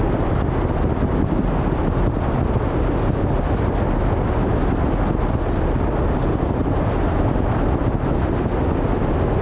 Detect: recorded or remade recorded